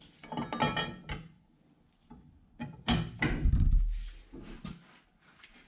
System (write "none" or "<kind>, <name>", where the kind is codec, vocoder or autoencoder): none